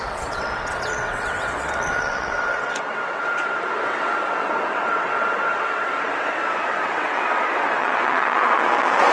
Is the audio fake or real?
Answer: fake